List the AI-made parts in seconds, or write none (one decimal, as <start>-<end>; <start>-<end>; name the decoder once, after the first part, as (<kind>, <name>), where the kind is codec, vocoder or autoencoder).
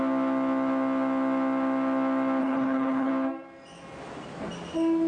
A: 2.4-3.1 (codec, HILCodec)